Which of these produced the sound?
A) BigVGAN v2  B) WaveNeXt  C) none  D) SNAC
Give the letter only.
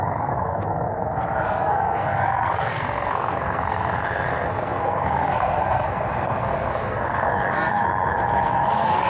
D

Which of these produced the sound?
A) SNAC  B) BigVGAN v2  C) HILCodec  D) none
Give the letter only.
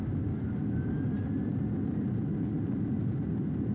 D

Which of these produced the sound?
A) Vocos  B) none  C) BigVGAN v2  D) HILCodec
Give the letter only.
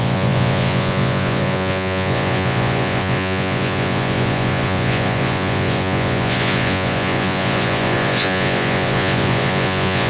A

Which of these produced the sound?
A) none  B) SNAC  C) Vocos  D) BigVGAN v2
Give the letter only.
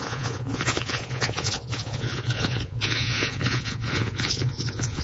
C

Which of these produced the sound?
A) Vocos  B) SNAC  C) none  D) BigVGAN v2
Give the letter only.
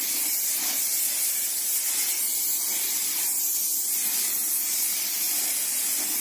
D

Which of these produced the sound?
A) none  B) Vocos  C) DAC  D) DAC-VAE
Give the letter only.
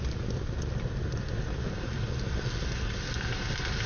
A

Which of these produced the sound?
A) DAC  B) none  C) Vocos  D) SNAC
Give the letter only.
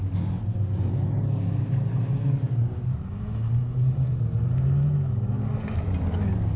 B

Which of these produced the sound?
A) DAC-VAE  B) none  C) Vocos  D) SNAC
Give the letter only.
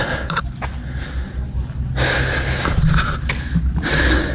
B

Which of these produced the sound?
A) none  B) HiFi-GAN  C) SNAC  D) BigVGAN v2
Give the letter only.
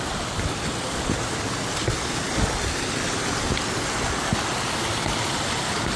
A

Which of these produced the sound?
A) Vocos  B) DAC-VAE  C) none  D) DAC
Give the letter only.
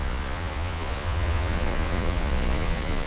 A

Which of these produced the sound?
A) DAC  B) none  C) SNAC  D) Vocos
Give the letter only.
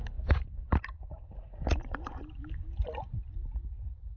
B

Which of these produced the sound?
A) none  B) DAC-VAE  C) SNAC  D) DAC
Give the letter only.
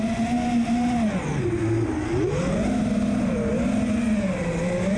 A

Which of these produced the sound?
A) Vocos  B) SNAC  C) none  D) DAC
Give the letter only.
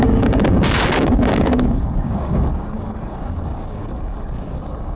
D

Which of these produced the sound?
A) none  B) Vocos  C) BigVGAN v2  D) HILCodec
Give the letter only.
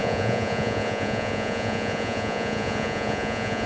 B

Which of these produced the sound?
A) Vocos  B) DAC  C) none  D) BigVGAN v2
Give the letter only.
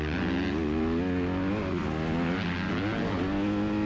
C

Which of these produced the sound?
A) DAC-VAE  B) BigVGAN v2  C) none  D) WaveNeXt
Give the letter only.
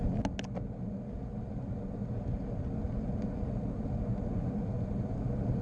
C